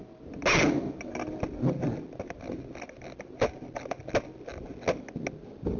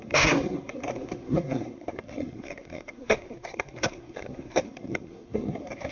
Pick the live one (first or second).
first